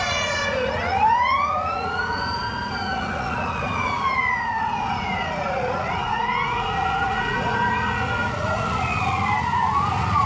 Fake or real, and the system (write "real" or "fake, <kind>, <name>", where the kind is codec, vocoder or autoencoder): fake, vocoder, Vocos